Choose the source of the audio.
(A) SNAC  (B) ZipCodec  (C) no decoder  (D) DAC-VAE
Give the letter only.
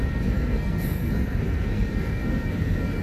A